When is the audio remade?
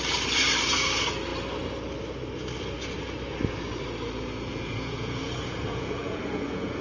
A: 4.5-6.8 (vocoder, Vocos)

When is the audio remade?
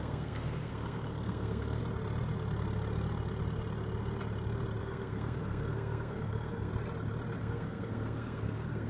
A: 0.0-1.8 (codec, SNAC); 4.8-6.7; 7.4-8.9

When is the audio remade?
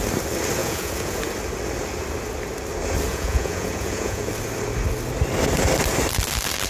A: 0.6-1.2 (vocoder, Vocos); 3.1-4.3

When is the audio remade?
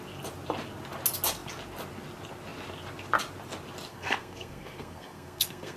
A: 3.9-5.8 (codec, SNAC)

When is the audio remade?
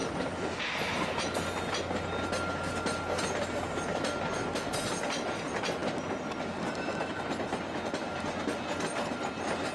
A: none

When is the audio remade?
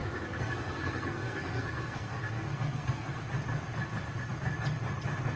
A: 0.0-3.2 (codec, SNAC)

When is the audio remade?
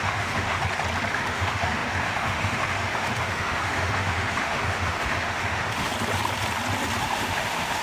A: 0.0-0.6 (autoencoder, DAC-VAE); 1.1-5.9; 7.0-7.8